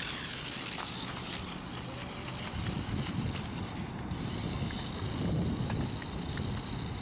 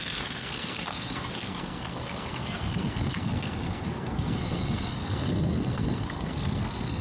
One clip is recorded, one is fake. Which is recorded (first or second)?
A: first